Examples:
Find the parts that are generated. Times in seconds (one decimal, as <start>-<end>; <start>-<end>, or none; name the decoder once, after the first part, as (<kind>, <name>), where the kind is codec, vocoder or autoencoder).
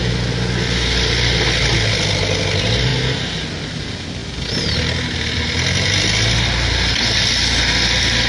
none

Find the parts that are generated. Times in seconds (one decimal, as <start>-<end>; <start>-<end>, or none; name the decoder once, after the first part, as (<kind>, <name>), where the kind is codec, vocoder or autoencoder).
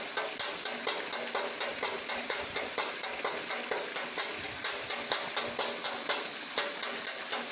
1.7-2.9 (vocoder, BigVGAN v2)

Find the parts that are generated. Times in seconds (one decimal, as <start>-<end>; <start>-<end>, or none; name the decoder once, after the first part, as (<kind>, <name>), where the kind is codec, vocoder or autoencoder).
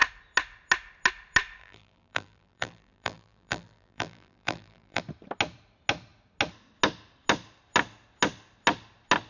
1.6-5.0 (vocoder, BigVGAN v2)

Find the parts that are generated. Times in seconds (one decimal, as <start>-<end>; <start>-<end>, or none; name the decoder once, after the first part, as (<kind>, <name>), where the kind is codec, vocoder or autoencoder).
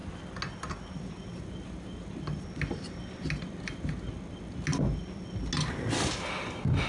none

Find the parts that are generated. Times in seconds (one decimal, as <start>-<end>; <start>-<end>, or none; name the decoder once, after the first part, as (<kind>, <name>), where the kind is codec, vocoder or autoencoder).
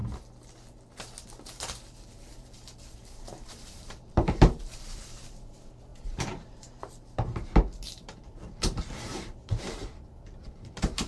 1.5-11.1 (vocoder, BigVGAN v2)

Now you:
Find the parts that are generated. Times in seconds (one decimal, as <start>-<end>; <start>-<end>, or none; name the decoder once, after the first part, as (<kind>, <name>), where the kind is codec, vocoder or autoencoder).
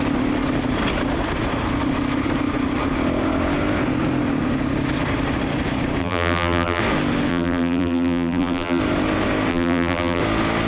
6.0-6.8 (vocoder, BigVGAN v2); 7.3-8.8; 9.5-10.2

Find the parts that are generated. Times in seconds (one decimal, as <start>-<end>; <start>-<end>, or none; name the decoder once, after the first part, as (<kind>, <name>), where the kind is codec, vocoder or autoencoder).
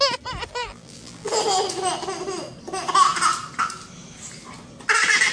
0.5-1.3 (vocoder, BigVGAN v2)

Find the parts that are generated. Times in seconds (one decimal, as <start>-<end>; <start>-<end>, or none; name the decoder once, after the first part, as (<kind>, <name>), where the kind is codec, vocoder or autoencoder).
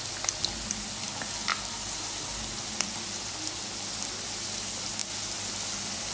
1.5-2.2 (vocoder, BigVGAN v2)